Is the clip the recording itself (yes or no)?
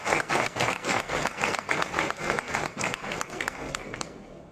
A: no